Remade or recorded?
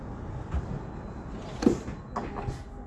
recorded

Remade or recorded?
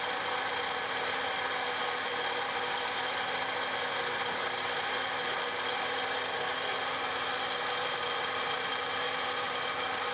recorded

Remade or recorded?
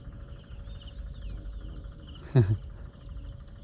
recorded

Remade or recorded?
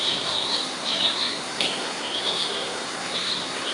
remade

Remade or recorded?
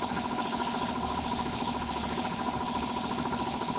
remade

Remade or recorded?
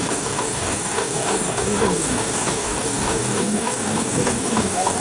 remade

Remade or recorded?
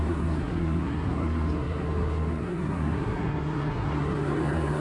remade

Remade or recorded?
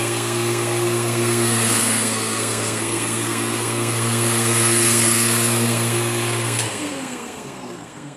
remade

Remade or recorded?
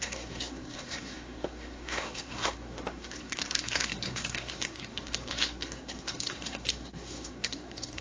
remade